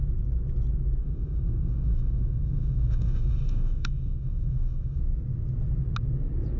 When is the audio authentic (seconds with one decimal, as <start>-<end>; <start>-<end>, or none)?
0.0-1.0; 5.0-6.6